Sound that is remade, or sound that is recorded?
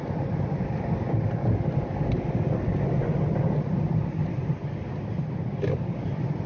recorded